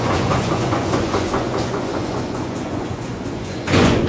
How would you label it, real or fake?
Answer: fake